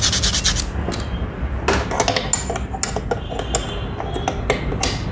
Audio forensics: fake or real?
real